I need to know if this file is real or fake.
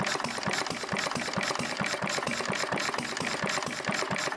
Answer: fake